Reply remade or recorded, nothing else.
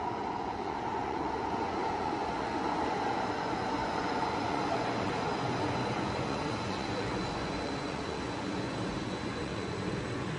remade